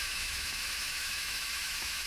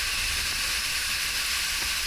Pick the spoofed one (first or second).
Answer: first